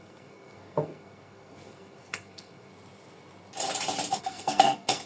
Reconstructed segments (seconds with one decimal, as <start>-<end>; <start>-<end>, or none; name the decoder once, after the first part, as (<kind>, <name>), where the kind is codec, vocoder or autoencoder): 0.0-2.7 (codec, SNAC); 4.2-5.1